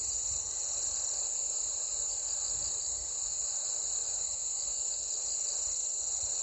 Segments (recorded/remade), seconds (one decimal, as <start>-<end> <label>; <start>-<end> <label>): 0.0-0.9 remade; 0.9-3.4 recorded; 3.4-4.2 remade; 4.2-6.4 recorded